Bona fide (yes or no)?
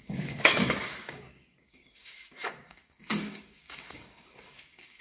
no